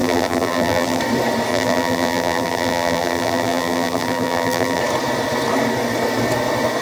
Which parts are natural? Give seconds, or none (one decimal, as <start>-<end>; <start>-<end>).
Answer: 1.0-1.5; 4.8-6.8